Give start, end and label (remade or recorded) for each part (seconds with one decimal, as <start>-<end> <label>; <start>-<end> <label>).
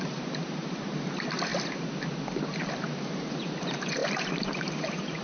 0.0-1.5 remade; 1.5-2.7 recorded; 2.7-5.2 remade